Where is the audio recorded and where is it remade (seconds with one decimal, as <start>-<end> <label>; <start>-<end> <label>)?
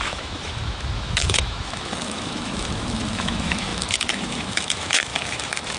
0.0-5.8 remade